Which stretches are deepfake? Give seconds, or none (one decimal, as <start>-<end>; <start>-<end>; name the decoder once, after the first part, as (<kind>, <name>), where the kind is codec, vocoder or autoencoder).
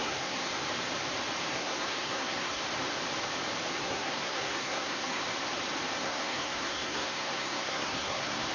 0.0-0.5 (codec, SNAC); 1.5-2.6; 3.7-5.2; 6.0-8.5